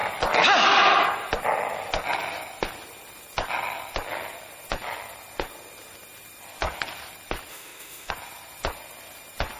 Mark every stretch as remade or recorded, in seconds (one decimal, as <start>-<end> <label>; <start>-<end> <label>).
0.0-7.5 recorded; 7.5-8.1 remade; 8.1-9.6 recorded